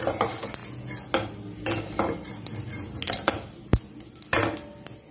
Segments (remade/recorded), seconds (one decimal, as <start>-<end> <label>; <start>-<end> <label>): 0.0-5.1 recorded

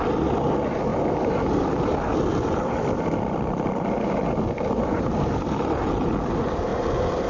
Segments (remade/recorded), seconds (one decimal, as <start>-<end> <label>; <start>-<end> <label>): 0.0-0.9 recorded; 0.9-3.1 remade; 3.1-7.3 recorded